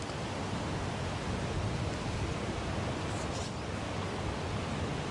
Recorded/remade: recorded